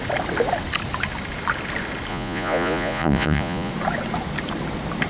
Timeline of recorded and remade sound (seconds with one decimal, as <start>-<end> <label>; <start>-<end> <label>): 0.0-2.1 recorded; 2.1-3.7 remade; 3.7-5.1 recorded